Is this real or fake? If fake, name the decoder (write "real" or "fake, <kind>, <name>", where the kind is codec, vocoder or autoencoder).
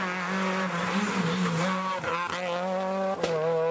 real